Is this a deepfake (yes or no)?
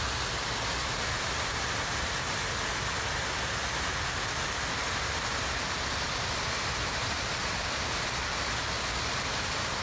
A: no